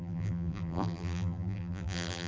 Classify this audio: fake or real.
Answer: fake